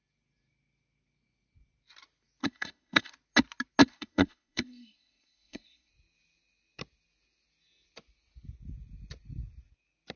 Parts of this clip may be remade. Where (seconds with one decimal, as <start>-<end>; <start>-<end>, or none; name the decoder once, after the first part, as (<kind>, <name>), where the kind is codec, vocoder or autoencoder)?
2.4-3.1 (codec, SNAC); 3.8-5.9

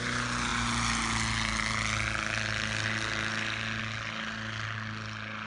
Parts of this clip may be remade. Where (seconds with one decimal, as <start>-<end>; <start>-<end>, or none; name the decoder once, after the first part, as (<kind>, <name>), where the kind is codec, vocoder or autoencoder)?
none